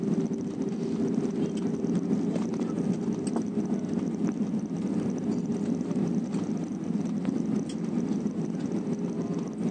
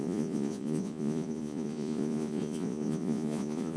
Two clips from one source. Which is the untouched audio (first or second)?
first